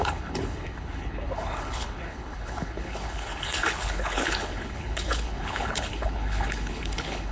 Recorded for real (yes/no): no